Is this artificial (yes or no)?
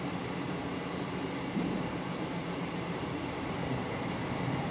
yes